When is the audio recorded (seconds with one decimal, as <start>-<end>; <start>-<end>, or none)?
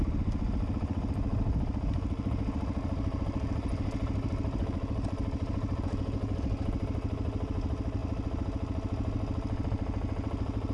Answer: 0.0-10.7